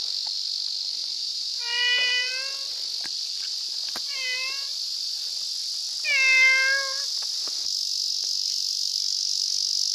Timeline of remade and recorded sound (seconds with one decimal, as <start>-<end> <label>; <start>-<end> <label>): 0.0-1.0 recorded; 1.0-2.3 remade; 2.3-9.9 recorded